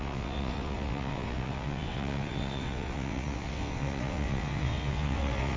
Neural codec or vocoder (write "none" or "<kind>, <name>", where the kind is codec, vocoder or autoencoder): vocoder, WaveNeXt